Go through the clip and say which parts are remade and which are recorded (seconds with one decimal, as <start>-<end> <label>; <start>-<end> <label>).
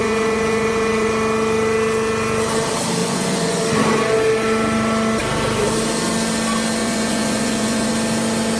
0.0-1.1 remade; 1.1-3.0 recorded; 3.0-3.6 remade; 3.6-6.8 recorded; 6.8-7.9 remade; 7.9-8.6 recorded